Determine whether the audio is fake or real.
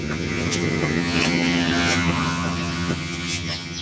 fake